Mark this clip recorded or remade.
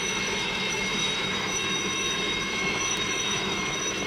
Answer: remade